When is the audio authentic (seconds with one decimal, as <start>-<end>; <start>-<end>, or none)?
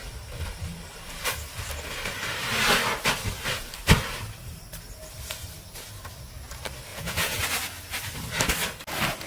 0.0-6.9; 7.4-9.3